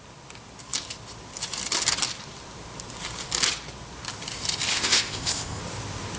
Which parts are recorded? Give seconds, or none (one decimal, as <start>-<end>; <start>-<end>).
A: 0.0-4.7; 5.6-6.2